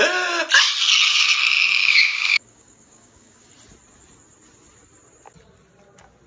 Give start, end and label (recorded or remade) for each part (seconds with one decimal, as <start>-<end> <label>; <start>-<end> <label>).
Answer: 0.0-1.8 recorded; 1.8-3.5 remade; 3.5-6.3 recorded